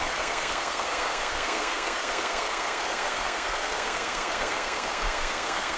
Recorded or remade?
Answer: remade